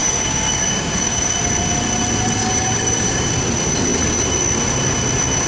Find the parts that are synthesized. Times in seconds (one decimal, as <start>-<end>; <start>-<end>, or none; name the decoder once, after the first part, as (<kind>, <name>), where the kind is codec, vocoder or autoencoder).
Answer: 0.0-1.3 (codec, DAC); 2.4-3.3